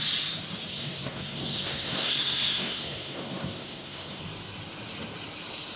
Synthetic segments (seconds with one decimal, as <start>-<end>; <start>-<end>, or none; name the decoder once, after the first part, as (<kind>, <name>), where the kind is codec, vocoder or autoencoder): 0.7-4.2 (codec, SNAC)